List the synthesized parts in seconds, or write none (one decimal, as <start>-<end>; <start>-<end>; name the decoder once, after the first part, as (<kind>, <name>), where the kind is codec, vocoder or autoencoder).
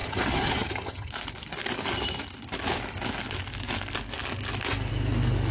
0.0-1.1 (vocoder, HiFi-GAN)